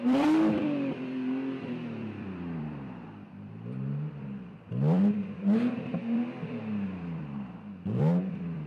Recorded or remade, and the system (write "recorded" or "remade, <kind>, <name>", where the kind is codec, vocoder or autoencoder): remade, vocoder, BigVGAN v2